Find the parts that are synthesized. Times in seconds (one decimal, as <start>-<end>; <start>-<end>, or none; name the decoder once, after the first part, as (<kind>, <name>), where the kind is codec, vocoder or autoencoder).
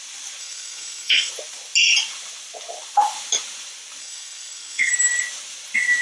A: 0.4-1.3 (codec, SNAC); 4.0-4.9